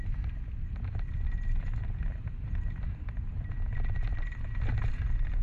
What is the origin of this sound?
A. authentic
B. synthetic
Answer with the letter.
A